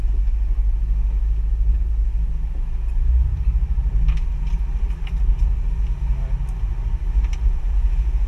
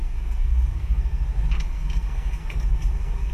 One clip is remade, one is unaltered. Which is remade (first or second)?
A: second